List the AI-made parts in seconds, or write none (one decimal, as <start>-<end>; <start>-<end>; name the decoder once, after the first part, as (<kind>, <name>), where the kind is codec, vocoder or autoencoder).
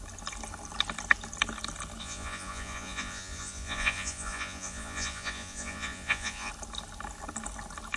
2.0-6.5 (vocoder, Vocos)